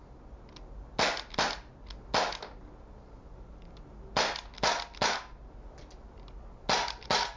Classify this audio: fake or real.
real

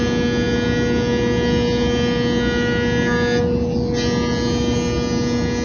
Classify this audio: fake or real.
real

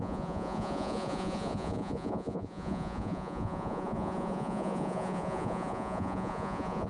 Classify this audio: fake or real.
fake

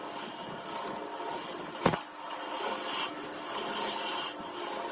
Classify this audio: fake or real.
real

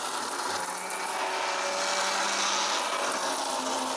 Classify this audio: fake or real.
real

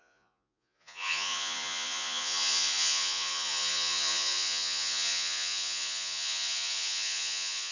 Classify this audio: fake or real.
fake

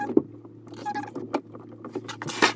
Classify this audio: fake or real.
real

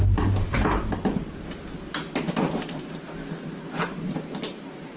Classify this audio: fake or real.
real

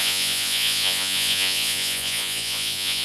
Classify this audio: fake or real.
fake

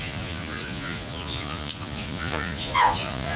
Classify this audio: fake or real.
fake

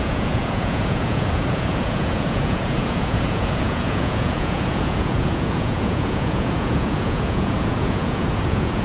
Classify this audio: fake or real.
fake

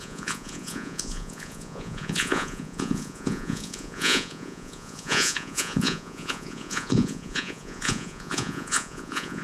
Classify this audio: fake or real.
fake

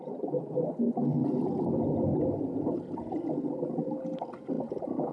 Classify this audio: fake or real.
real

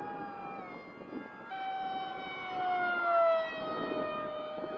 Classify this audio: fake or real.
real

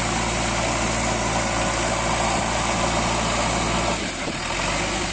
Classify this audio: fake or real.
real